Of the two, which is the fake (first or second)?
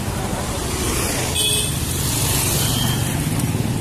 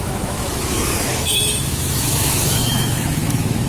second